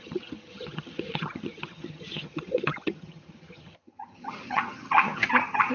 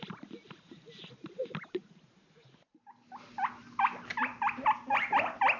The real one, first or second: second